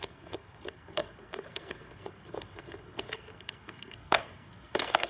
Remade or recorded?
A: remade